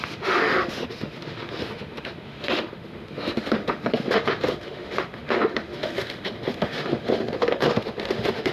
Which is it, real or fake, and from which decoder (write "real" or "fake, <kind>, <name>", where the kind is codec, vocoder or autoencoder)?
fake, autoencoder, DAC-VAE